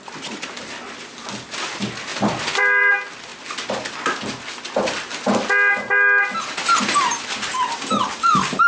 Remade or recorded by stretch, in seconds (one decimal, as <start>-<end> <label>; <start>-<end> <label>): 0.0-2.1 recorded; 2.1-2.9 remade; 2.9-8.7 recorded